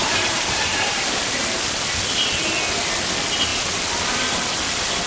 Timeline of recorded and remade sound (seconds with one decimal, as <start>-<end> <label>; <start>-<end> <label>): 0.0-1.6 remade; 1.6-5.1 recorded